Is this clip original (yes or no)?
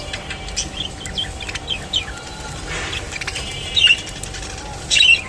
yes